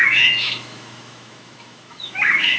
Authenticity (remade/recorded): remade